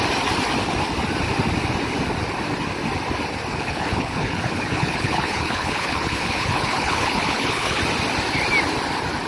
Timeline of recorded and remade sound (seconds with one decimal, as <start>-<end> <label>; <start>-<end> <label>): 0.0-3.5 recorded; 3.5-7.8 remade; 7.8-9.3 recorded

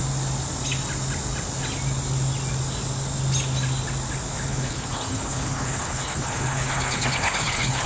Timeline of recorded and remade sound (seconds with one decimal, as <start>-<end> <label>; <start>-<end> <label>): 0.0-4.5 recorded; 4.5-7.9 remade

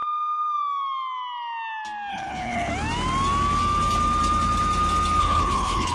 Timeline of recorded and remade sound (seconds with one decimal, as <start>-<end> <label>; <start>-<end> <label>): 0.0-2.1 recorded; 2.1-2.7 remade; 2.7-5.2 recorded; 5.2-5.9 remade

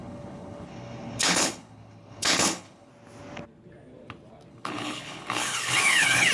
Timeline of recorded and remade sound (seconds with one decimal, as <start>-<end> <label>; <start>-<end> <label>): 0.0-2.9 remade; 2.9-4.5 recorded; 4.5-6.3 remade

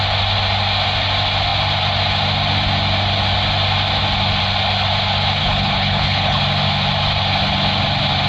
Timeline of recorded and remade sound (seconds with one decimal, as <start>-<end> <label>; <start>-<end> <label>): 0.0-5.4 recorded; 5.4-6.4 remade; 6.4-8.3 recorded

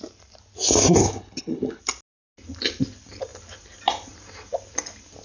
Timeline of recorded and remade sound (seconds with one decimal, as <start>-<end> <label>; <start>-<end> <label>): 0.0-1.0 recorded; 1.0-1.8 remade; 1.8-5.2 recorded

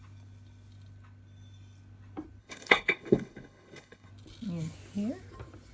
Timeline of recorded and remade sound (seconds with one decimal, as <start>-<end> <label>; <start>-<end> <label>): 0.0-2.4 recorded; 2.4-4.1 remade; 4.1-5.7 recorded